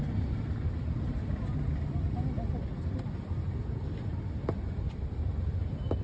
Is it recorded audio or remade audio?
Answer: recorded